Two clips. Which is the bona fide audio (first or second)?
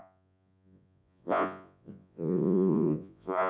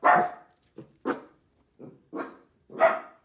second